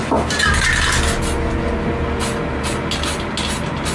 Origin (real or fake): real